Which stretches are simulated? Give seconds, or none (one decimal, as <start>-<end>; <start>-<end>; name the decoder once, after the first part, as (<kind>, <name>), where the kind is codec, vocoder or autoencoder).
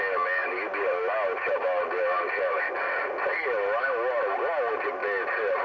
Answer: none